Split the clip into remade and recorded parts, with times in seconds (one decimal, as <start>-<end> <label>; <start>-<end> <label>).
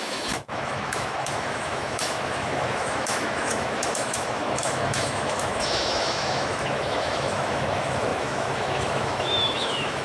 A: 0.0-10.0 remade